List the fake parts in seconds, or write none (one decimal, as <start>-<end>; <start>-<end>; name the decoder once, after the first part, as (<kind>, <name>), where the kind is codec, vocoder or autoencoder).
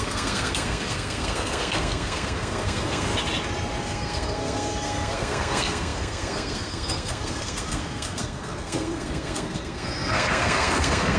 0.0-3.1 (codec, SNAC); 3.8-11.2